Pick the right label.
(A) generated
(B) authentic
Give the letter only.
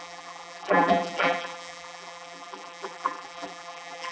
A